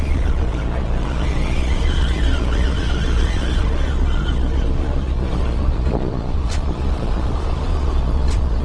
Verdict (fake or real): fake